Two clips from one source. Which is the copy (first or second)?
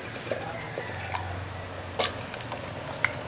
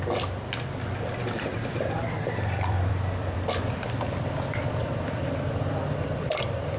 second